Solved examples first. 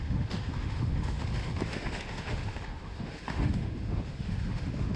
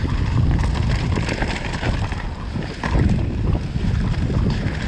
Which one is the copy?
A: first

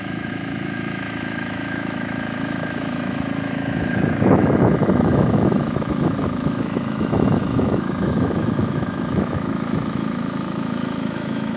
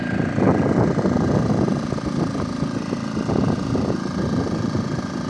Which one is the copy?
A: first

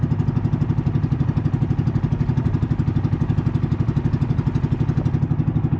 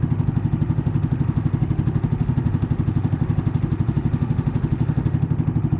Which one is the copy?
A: second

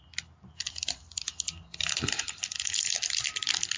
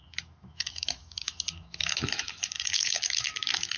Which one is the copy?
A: second